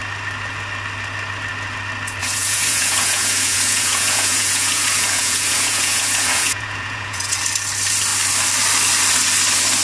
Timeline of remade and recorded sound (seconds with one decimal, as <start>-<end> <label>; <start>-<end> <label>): 0.0-2.2 recorded; 2.2-7.4 remade; 7.4-9.8 recorded